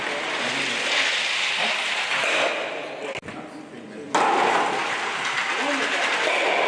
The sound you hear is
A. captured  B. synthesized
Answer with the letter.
A